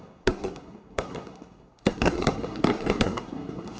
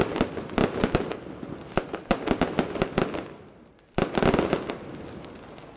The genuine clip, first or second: second